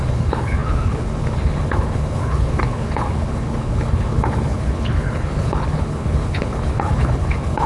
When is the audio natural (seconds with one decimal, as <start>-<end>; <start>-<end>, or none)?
none